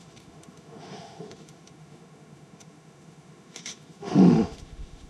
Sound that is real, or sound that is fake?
fake